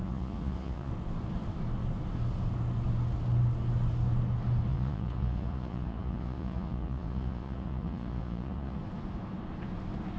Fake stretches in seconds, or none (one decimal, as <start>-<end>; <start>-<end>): 0.0-0.9; 4.7-8.8